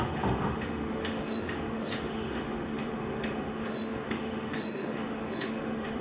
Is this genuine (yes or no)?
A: no